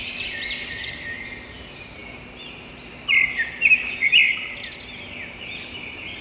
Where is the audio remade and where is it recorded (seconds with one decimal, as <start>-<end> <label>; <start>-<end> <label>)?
0.0-6.2 recorded

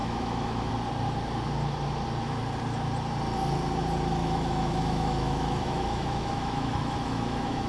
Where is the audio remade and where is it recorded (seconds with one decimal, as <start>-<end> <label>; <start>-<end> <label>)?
0.0-0.7 remade; 0.7-4.2 recorded; 4.2-7.7 remade

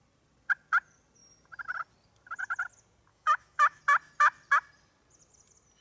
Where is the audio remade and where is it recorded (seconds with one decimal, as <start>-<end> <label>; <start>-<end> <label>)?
0.0-3.1 recorded; 3.1-3.8 remade; 3.8-5.8 recorded

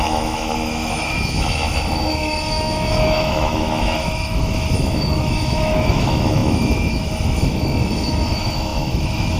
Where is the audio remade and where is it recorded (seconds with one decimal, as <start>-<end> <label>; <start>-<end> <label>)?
0.0-9.4 remade